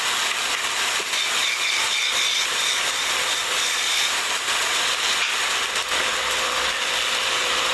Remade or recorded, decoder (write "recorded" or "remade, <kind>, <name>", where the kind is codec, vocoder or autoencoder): recorded